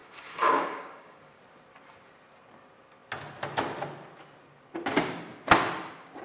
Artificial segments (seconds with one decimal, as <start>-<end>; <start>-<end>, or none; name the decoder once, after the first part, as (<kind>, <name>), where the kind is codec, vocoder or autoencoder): 0.0-1.4 (codec, DAC)